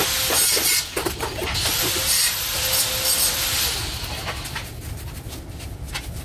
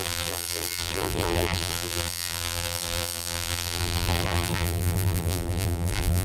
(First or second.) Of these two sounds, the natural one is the first